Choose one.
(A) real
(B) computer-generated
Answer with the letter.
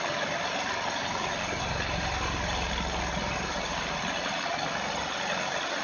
A